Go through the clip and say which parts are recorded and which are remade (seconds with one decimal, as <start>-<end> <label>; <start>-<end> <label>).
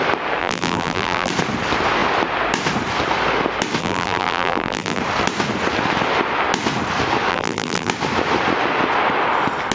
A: 0.0-0.4 recorded; 0.4-1.3 remade; 1.3-3.8 recorded; 3.8-5.0 remade; 5.0-7.3 recorded; 7.3-7.9 remade; 7.9-9.7 recorded